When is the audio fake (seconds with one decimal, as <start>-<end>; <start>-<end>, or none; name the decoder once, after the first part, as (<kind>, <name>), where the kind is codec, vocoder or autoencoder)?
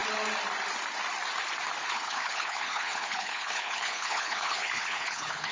1.9-5.5 (codec, HILCodec)